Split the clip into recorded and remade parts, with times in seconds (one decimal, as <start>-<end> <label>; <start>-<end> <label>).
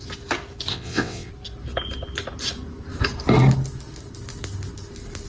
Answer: 0.0-0.7 recorded; 0.7-1.3 remade; 1.3-5.3 recorded